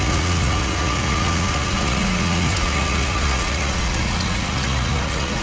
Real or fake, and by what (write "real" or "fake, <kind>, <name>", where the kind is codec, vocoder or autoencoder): fake, vocoder, Vocos